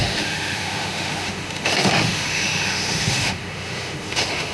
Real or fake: fake